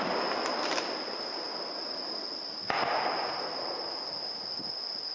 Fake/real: real